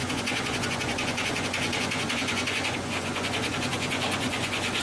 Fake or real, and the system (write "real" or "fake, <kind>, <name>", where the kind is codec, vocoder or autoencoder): fake, vocoder, Vocos